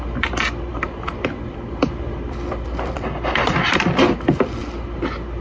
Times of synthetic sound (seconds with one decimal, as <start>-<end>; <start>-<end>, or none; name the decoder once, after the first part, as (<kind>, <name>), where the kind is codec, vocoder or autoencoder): 0.7-3.8 (vocoder, BigVGAN v2)